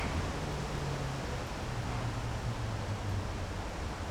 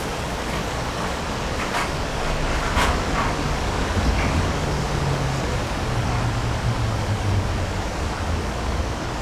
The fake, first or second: second